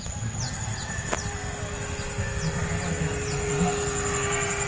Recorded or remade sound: recorded